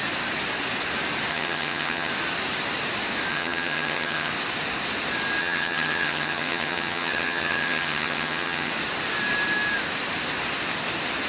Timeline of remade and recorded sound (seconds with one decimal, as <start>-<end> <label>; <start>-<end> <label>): 0.0-1.3 recorded; 1.3-2.1 remade; 2.1-3.3 recorded; 3.3-4.3 remade; 4.3-5.4 recorded; 5.4-8.7 remade; 8.7-11.3 recorded